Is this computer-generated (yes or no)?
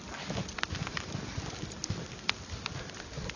no